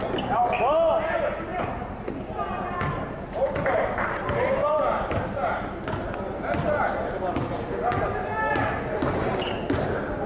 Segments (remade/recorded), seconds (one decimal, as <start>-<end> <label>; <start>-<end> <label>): 0.0-1.5 recorded; 1.5-2.0 remade; 2.0-2.5 recorded; 2.5-5.8 remade; 5.8-10.3 recorded